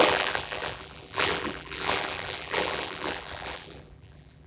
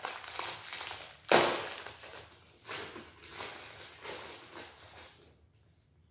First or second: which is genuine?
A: second